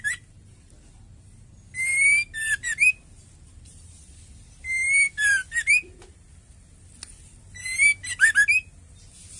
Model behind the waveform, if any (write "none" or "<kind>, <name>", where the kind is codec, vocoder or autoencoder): none